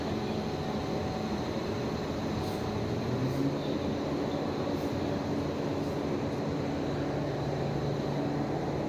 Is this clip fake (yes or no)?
no